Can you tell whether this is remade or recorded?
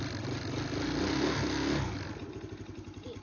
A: recorded